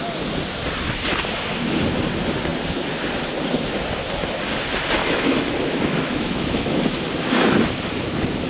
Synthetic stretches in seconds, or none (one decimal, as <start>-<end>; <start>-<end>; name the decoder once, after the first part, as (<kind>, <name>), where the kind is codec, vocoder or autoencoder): 5.0-7.0 (autoencoder, DAC-VAE)